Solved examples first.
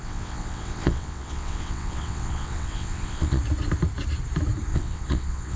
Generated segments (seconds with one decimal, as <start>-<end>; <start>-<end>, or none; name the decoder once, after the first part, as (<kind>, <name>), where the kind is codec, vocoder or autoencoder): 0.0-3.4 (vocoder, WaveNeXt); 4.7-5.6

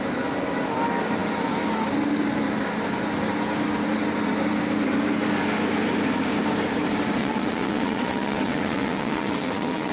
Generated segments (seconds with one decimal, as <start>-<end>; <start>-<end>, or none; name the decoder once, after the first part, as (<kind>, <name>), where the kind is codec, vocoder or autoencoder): 7.2-9.9 (vocoder, WaveNeXt)

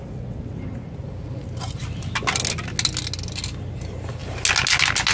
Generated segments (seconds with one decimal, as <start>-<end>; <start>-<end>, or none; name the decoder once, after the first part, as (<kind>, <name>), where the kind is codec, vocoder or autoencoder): 0.0-0.6 (vocoder, WaveNeXt)

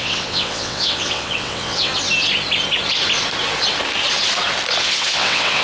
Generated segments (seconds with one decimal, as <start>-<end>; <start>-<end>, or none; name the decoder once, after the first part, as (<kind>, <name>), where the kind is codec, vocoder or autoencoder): 0.0-1.9 (vocoder, WaveNeXt); 4.8-5.6

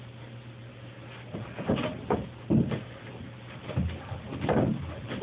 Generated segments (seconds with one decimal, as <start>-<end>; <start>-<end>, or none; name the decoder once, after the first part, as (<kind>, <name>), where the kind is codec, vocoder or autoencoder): none

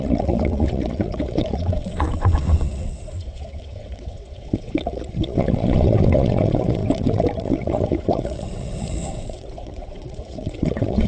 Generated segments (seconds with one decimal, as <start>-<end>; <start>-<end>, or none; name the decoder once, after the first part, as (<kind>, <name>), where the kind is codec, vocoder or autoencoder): 0.0-11.1 (vocoder, WaveNeXt)

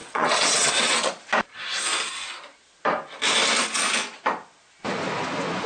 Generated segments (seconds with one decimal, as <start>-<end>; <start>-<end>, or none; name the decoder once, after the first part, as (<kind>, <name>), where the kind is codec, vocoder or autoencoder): 0.0-1.1 (vocoder, WaveNeXt)